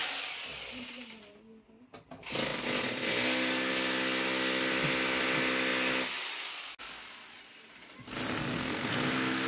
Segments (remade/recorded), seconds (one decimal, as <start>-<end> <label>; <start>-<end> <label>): 0.0-8.5 recorded; 8.5-9.5 remade